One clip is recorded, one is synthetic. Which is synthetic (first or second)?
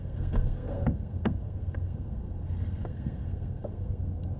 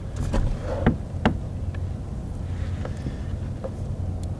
first